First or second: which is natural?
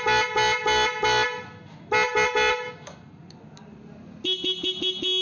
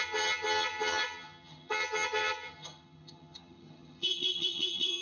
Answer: first